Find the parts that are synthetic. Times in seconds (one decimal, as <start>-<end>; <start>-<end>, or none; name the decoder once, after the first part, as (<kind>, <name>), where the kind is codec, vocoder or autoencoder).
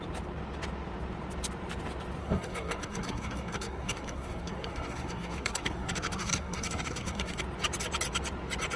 2.2-7.4 (codec, SNAC)